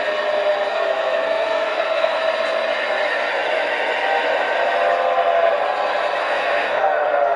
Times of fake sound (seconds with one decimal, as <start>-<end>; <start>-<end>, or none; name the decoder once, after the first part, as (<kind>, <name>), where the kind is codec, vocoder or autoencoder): 0.7-2.2 (codec, SNAC); 6.2-6.8